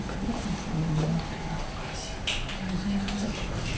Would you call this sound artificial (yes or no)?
no